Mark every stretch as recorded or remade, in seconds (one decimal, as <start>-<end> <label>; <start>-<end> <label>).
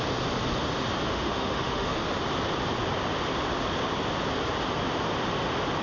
0.0-1.1 recorded; 1.1-2.0 remade; 2.0-5.8 recorded